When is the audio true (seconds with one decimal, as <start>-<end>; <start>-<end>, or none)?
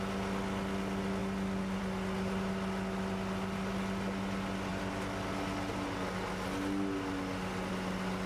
0.0-8.3